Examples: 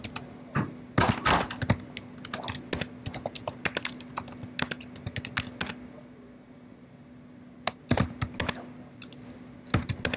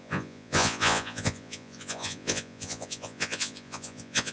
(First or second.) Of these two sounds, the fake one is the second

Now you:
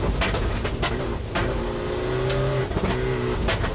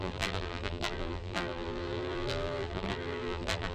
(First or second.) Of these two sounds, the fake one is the second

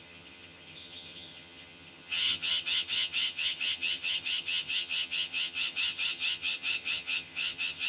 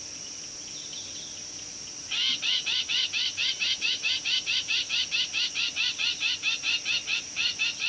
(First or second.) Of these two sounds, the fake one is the first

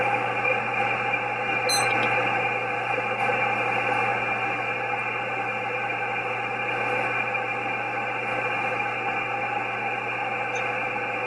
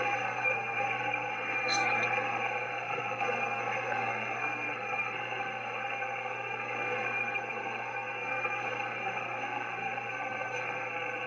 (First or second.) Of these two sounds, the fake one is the second